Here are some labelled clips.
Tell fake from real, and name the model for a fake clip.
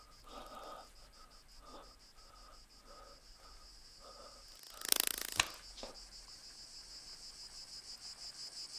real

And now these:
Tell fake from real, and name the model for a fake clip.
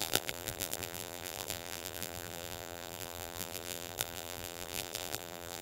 fake, vocoder, BigVGAN v2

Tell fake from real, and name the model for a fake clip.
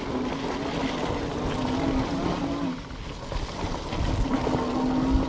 real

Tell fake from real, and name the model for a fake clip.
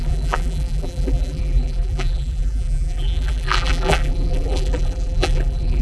fake, vocoder, BigVGAN v2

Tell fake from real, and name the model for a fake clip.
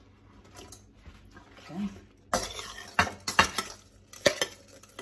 real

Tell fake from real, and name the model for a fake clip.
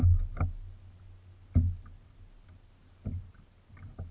real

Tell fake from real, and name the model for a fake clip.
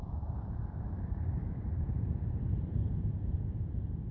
fake, vocoder, BigVGAN v2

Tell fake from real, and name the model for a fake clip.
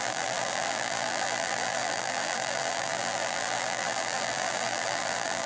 fake, vocoder, BigVGAN v2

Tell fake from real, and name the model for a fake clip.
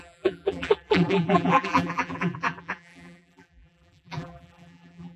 fake, vocoder, BigVGAN v2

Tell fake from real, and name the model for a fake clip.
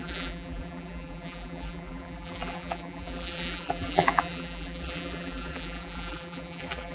fake, vocoder, BigVGAN v2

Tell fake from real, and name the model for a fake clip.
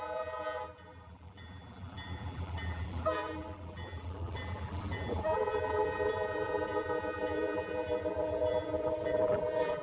fake, vocoder, BigVGAN v2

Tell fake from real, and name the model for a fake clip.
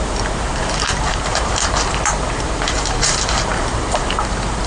fake, vocoder, BigVGAN v2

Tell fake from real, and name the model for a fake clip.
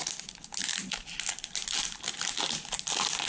real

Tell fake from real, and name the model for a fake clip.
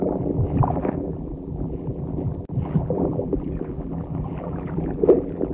fake, vocoder, BigVGAN v2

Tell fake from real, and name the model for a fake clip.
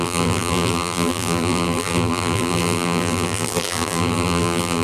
fake, vocoder, BigVGAN v2